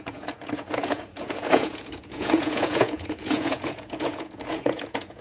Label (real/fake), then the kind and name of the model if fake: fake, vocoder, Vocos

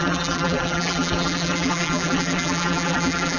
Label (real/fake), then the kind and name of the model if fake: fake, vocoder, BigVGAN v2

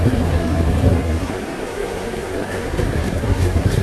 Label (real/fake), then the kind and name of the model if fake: fake, codec, SNAC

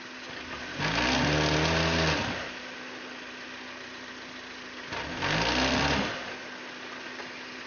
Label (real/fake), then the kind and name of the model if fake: real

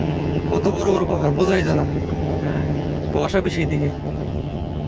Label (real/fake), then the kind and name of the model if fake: fake, vocoder, HiFi-GAN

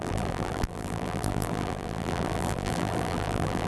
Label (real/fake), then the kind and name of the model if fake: fake, vocoder, BigVGAN v2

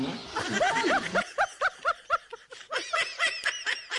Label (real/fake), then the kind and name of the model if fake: fake, vocoder, BigVGAN v2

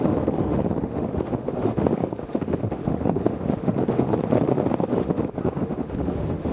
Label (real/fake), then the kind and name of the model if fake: fake, autoencoder, DAC-VAE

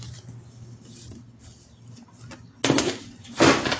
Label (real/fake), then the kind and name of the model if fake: real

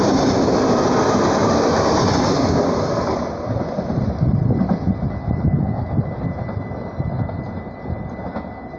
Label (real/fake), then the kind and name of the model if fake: real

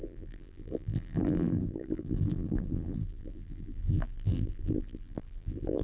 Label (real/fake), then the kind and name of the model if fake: fake, vocoder, BigVGAN v2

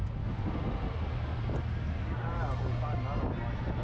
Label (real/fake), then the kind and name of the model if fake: real